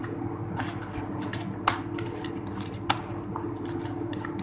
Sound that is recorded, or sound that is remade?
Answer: recorded